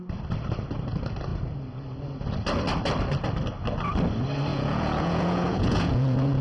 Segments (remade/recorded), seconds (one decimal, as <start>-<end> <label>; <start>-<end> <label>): 0.0-4.5 recorded; 4.5-6.4 remade